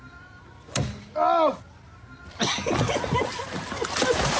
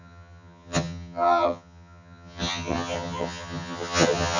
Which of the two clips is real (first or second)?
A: first